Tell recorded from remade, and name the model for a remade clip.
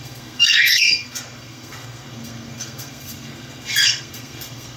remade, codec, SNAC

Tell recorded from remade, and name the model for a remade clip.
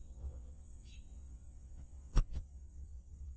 remade, vocoder, WaveNeXt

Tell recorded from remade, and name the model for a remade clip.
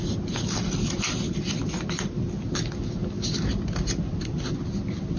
recorded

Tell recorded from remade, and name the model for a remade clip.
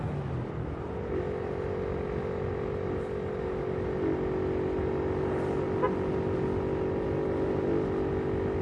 recorded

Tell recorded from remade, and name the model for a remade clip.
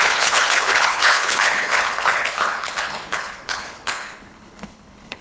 remade, codec, HILCodec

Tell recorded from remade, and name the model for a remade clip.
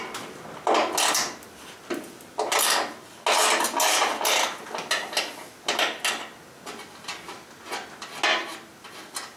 recorded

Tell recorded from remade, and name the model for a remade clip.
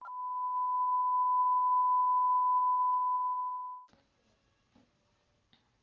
recorded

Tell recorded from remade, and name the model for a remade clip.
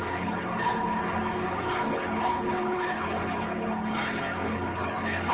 remade, codec, HILCodec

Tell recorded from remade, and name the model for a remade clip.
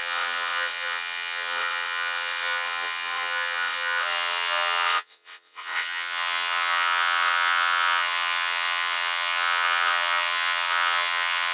remade, vocoder, WaveNeXt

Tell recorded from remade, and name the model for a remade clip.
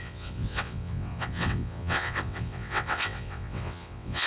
remade, vocoder, WaveNeXt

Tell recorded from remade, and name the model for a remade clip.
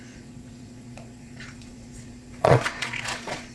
remade, vocoder, Vocos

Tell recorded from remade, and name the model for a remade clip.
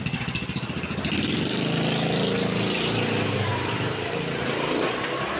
recorded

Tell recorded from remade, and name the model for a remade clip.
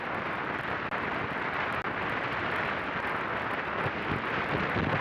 recorded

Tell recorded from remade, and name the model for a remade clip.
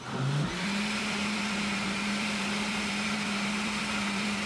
remade, vocoder, BigVGAN v2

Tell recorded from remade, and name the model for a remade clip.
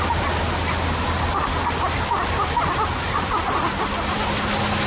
recorded